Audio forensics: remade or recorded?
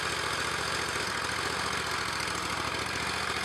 recorded